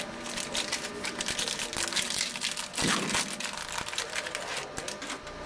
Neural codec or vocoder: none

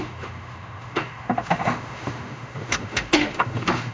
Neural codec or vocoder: autoencoder, DAC-VAE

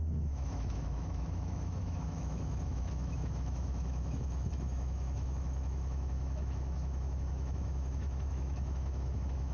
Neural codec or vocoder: autoencoder, DAC-VAE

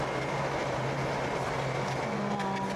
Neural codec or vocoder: none